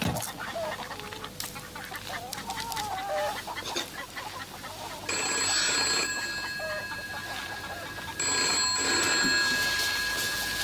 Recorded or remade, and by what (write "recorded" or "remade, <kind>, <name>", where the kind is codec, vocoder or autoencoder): recorded